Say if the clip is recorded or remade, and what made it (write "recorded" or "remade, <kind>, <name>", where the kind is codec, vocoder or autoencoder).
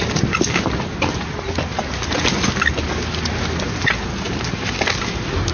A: recorded